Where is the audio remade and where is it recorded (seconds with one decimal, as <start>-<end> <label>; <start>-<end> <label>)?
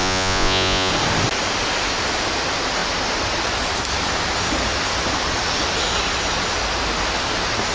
0.0-0.9 remade; 0.9-7.7 recorded